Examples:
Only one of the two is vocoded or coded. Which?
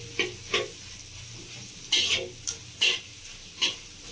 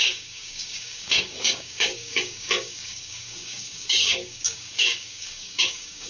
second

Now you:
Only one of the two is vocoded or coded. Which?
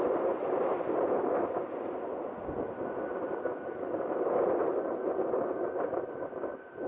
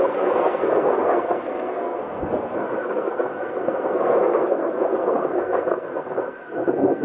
second